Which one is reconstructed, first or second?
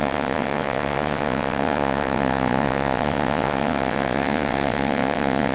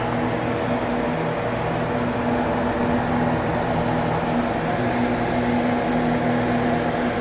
first